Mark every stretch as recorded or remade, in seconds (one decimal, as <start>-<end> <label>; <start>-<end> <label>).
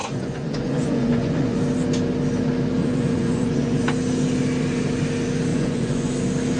0.0-1.6 remade; 1.6-2.8 recorded; 2.8-3.9 remade; 3.9-5.5 recorded; 5.5-6.1 remade; 6.1-6.6 recorded